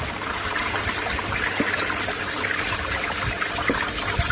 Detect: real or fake real